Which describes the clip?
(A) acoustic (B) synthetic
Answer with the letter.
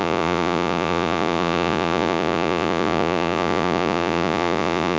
B